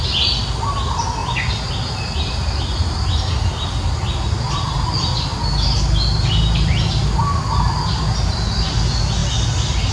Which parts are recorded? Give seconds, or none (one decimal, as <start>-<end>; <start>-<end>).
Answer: 0.0-9.9